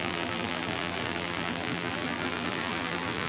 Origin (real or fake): fake